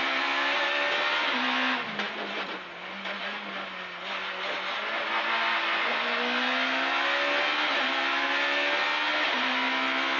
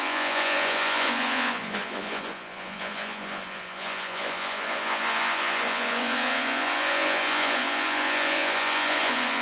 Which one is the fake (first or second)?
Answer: second